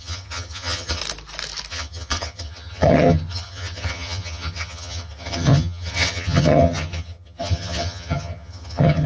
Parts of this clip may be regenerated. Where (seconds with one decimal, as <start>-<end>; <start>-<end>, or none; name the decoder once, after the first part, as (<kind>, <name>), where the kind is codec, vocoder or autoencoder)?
0.0-1.0 (vocoder, HiFi-GAN); 1.7-9.1